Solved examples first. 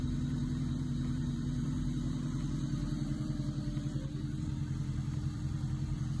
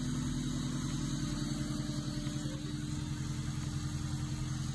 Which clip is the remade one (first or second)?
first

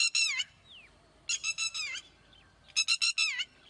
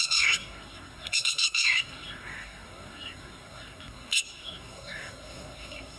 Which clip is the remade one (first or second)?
second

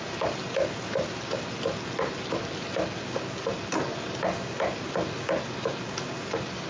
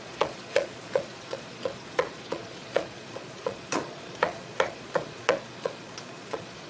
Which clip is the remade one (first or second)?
second